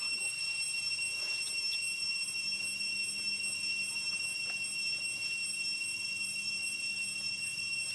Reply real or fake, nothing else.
real